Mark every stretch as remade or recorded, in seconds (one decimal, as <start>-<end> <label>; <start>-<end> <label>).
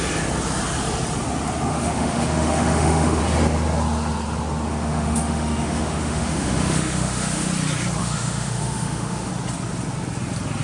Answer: 0.0-1.7 recorded; 1.7-3.2 remade; 3.2-4.7 recorded; 4.7-7.5 remade; 7.5-8.0 recorded; 8.0-9.3 remade; 9.3-10.6 recorded